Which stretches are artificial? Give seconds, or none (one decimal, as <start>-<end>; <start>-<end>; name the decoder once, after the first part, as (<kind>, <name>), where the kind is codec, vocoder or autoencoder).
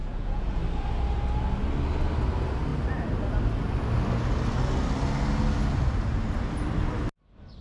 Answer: 0.0-0.6 (vocoder, Vocos)